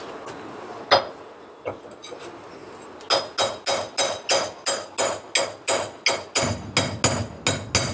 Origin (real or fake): real